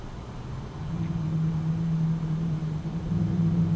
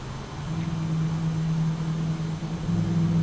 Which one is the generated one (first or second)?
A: first